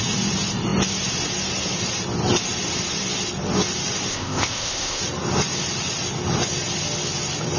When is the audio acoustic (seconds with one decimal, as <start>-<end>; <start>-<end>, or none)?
0.0-4.1; 5.0-7.6